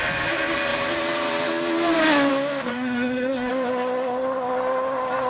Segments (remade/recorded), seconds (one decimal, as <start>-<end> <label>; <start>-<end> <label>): 0.0-2.7 recorded; 2.7-3.5 remade; 3.5-5.3 recorded